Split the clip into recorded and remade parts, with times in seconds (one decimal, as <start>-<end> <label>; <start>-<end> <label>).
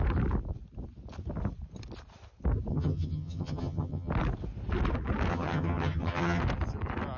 0.0-2.7 recorded; 2.7-4.1 remade; 4.1-5.3 recorded; 5.3-6.4 remade; 6.4-7.2 recorded